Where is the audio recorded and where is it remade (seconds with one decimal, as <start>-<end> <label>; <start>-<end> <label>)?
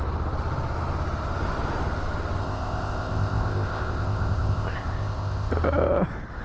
0.0-2.4 recorded; 2.4-5.5 remade; 5.5-6.4 recorded